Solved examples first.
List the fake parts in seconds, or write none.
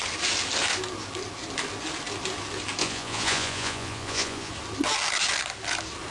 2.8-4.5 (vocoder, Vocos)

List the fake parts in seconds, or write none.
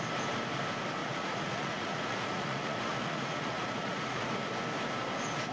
1.0-4.3 (vocoder, Vocos)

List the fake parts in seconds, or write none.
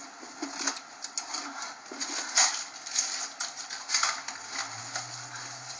none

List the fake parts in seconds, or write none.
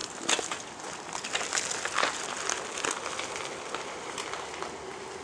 none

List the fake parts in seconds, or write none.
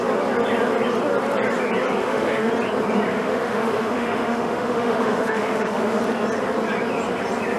2.0-2.5 (autoencoder, DAC-VAE); 3.1-6.0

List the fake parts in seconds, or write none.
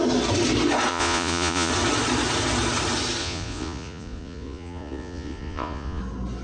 0.9-1.7 (vocoder, Vocos); 3.2-6.0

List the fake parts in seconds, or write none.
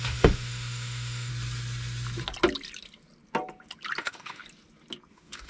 0.0-1.3 (autoencoder, DAC-VAE); 4.0-4.4; 5.1-5.5